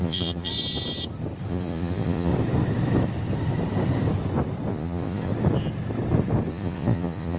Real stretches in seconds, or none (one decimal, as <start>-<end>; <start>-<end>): 0.5-1.5; 2.3-4.7; 5.3-6.5